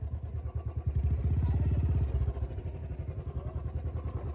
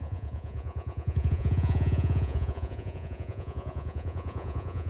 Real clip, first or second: first